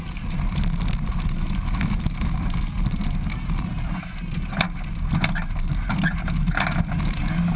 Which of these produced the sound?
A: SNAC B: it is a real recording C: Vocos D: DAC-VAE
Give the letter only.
B